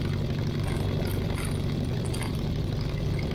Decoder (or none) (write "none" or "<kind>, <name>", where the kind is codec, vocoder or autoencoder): none